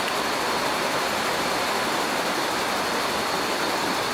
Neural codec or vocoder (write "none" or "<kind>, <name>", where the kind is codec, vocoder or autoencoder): none